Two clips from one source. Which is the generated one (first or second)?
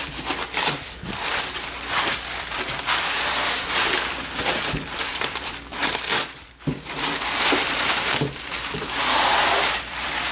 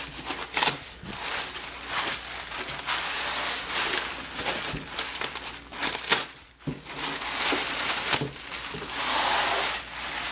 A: first